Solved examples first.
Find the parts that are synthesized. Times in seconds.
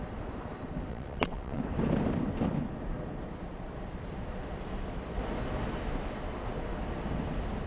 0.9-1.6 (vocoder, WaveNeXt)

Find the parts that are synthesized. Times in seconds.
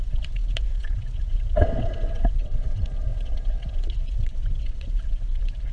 0.0-5.7 (vocoder, WaveNeXt)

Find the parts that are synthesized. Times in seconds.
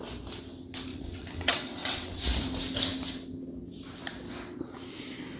0.9-2.2 (vocoder, WaveNeXt)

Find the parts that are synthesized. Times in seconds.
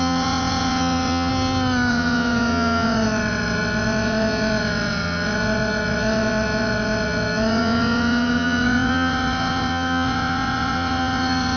0.0-1.3 (vocoder, WaveNeXt); 1.9-11.6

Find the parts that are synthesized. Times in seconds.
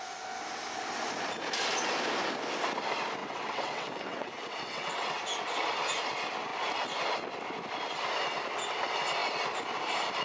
3.2-5.2 (vocoder, WaveNeXt)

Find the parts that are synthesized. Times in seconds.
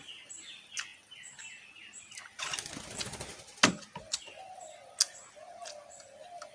none